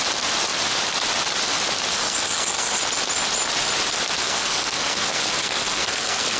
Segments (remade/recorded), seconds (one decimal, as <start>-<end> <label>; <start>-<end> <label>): 0.0-1.9 recorded; 1.9-2.8 remade; 2.8-4.2 recorded; 4.2-6.4 remade